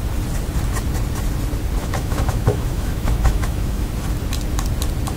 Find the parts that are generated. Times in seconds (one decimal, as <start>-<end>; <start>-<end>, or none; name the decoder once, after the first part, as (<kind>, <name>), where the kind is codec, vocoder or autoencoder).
1.8-3.9 (autoencoder, DAC-VAE)